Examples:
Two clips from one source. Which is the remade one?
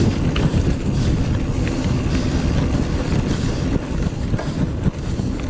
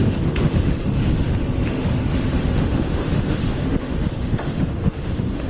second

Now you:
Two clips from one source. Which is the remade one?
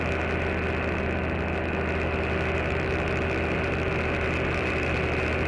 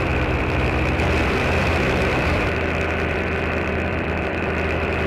second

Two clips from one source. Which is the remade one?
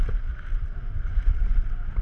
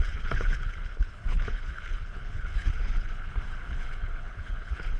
second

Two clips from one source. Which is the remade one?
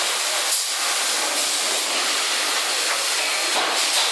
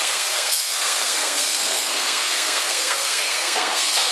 second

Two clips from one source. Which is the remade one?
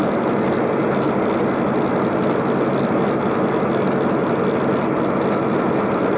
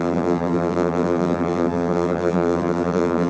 second